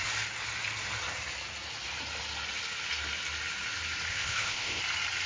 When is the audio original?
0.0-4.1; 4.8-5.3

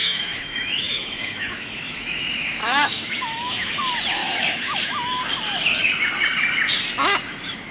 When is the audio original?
3.8-4.2; 5.2-7.7

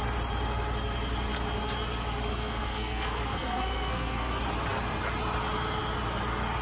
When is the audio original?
0.0-2.3; 4.3-6.6

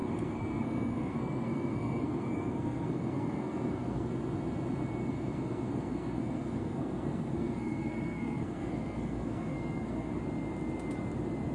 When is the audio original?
4.1-5.0; 10.2-11.5

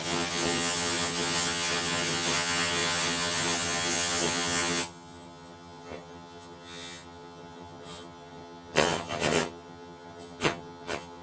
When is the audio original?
none

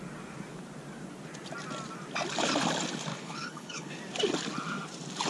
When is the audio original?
0.0-3.1; 3.9-5.3

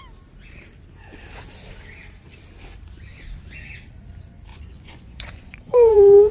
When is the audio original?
0.0-4.5